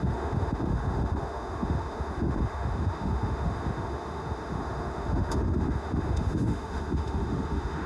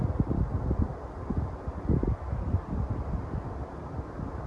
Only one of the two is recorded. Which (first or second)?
second